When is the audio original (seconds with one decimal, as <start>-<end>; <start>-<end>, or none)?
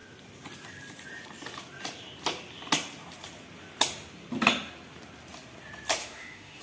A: 0.0-6.0